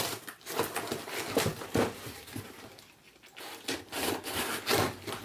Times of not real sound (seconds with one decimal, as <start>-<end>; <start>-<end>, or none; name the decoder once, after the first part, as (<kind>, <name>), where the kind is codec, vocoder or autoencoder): 0.0-5.2 (vocoder, BigVGAN v2)